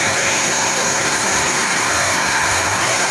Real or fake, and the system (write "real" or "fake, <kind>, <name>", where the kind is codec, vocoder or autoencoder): fake, codec, SNAC